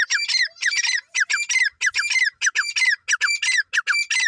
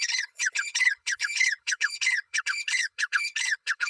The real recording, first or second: first